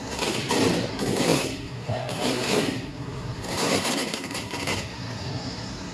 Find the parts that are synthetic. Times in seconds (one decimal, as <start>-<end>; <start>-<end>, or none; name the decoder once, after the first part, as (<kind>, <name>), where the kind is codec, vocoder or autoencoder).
0.0-0.4 (codec, SNAC); 0.9-5.9